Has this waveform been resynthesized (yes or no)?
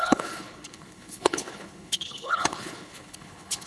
yes